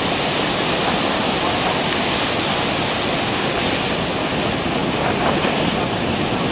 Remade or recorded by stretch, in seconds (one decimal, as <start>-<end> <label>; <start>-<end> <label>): 0.0-6.5 recorded